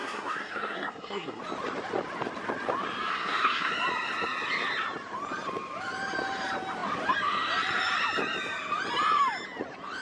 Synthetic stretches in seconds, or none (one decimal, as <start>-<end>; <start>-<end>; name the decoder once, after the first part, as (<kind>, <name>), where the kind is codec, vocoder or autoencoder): 0.0-1.4 (codec, SNAC); 3.1-3.7